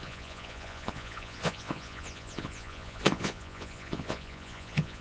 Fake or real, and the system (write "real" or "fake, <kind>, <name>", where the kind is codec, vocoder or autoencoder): fake, vocoder, Vocos